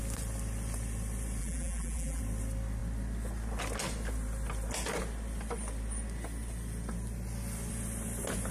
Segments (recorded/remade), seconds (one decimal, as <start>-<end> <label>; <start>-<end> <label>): 0.0-1.4 recorded; 1.4-2.2 remade; 2.2-8.5 recorded